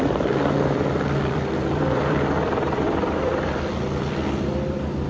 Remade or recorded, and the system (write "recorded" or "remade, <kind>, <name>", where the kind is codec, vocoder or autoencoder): remade, vocoder, BigVGAN v2